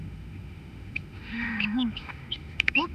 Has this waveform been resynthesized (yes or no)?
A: yes